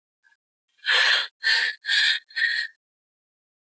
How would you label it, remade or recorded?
recorded